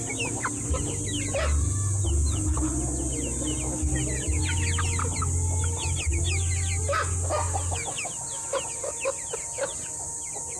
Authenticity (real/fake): real